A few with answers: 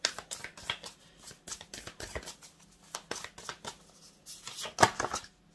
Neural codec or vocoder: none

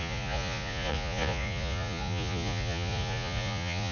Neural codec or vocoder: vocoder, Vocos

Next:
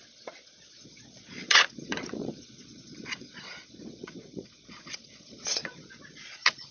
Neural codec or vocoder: vocoder, Vocos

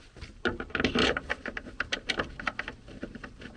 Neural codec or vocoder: none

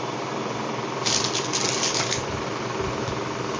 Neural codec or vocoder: none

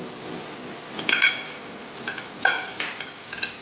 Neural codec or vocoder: none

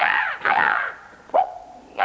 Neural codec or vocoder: vocoder, Vocos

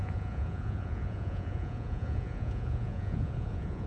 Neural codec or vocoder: vocoder, Vocos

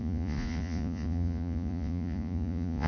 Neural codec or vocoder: vocoder, Vocos